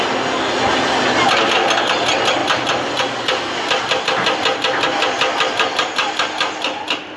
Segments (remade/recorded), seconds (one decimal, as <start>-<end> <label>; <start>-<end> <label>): 0.0-7.2 recorded